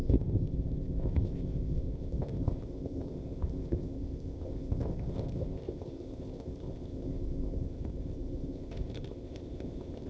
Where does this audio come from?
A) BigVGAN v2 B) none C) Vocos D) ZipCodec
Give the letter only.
D